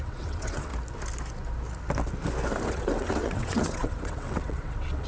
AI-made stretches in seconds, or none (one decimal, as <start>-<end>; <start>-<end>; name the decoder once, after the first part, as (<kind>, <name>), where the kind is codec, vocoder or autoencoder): 0.0-0.7 (vocoder, WaveNeXt); 2.7-5.1